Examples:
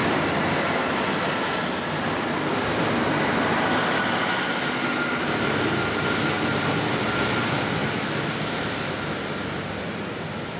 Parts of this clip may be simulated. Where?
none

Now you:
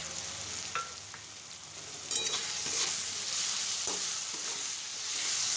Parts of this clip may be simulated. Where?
none

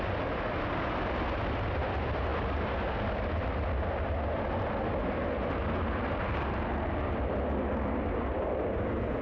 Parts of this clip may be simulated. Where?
none

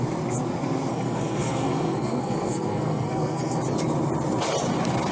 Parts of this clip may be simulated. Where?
0.9-3.6 (codec, SNAC)